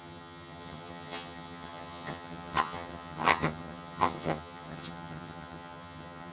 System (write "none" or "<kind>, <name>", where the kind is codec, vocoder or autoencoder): vocoder, HiFi-GAN